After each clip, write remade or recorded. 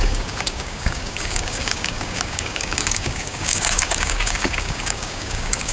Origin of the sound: remade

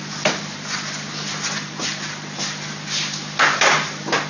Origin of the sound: recorded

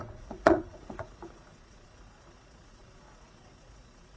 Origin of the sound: remade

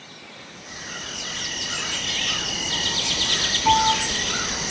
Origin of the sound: recorded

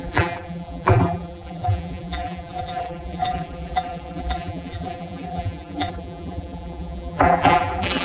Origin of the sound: remade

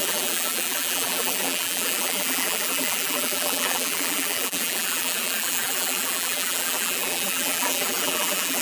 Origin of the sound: remade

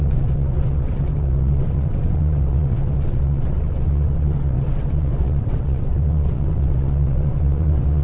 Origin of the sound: remade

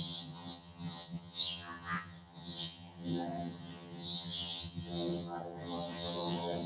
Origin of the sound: remade